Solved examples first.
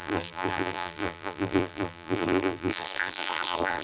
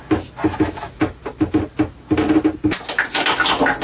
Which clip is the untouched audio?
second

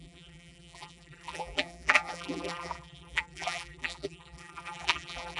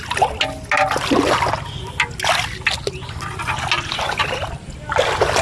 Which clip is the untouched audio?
second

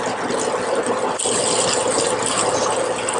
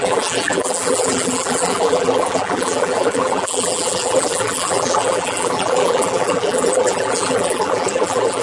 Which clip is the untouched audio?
first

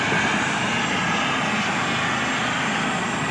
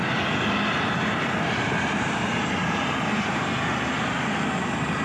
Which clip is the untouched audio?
first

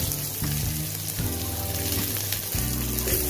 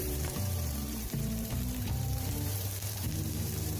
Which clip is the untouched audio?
first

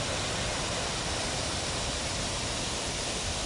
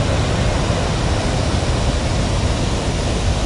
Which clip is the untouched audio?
second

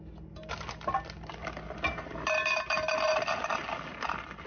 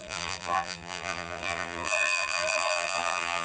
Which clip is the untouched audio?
first